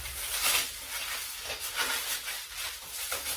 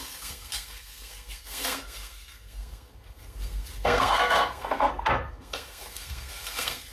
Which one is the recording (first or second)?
first